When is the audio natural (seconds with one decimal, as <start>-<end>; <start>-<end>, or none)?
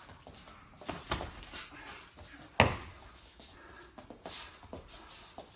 0.0-2.9; 3.5-5.6